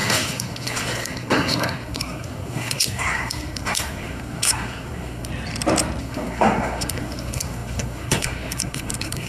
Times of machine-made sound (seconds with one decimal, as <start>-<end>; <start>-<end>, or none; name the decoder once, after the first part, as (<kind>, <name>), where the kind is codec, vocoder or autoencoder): 0.0-5.3 (codec, SNAC); 6.0-9.3